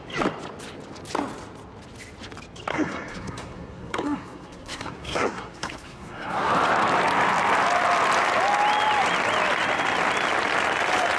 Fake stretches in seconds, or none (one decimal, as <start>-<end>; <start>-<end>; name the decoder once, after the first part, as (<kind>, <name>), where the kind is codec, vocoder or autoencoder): 2.7-6.5 (codec, SNAC)